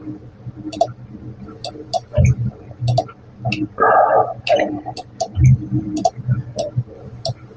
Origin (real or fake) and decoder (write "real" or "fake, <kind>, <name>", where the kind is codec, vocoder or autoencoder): fake, vocoder, BigVGAN v2